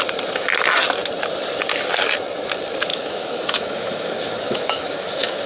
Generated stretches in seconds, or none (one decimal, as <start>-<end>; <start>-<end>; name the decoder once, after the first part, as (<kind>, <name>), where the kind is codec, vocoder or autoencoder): 2.9-5.5 (autoencoder, DAC-VAE)